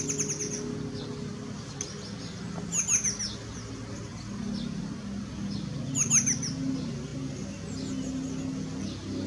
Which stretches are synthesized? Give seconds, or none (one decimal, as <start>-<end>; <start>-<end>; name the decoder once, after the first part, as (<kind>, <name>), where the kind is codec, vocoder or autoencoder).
none